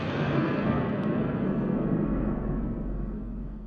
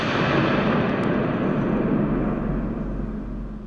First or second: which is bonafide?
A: second